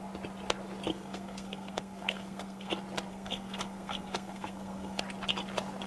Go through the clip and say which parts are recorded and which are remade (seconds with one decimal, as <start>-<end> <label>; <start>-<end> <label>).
0.0-0.9 recorded; 0.9-2.7 remade; 2.7-3.1 recorded; 3.1-5.0 remade; 5.0-5.9 recorded